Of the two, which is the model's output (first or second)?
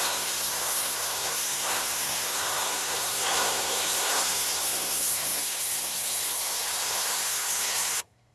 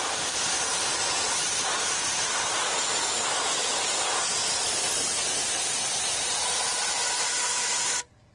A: first